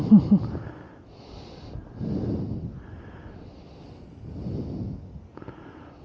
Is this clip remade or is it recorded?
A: recorded